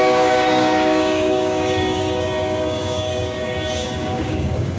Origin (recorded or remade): remade